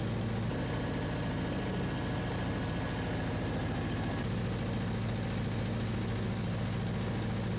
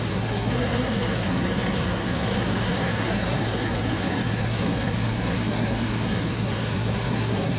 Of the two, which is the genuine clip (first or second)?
first